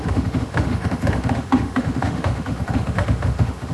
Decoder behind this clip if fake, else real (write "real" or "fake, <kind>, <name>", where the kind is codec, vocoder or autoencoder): fake, autoencoder, DAC-VAE